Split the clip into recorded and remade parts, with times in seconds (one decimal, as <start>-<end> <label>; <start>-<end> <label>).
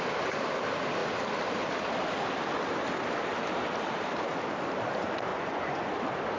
0.0-5.3 recorded; 5.3-5.9 remade; 5.9-6.4 recorded